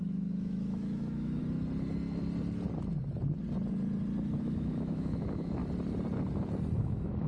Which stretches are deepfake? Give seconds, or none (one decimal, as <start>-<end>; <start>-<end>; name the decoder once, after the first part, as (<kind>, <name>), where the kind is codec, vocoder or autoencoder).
0.0-1.4 (autoencoder, DAC-VAE); 4.4-5.6; 6.8-7.3